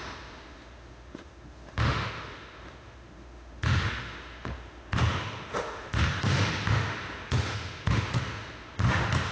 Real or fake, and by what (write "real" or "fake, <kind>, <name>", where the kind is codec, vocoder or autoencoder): fake, autoencoder, DAC-VAE